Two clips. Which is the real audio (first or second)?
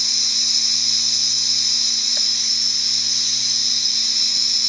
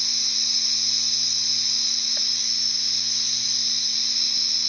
second